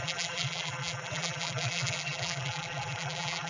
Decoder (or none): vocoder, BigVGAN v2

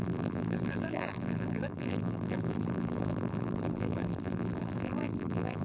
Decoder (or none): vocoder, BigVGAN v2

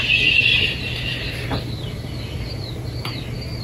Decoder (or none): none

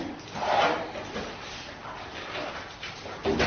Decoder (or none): none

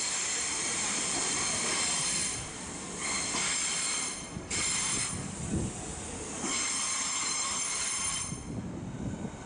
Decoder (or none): vocoder, BigVGAN v2